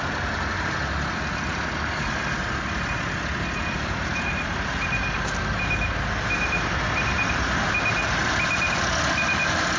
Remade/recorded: recorded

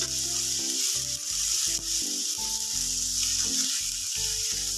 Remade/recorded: recorded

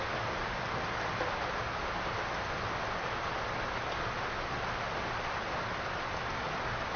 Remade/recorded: recorded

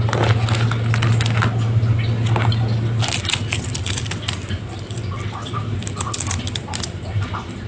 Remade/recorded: recorded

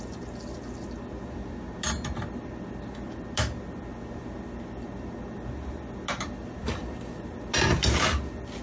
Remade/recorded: recorded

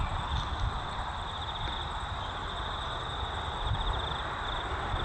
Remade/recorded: recorded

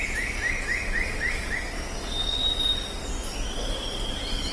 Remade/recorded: recorded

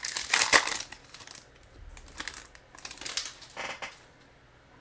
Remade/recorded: recorded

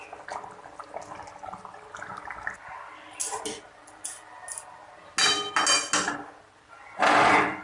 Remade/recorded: recorded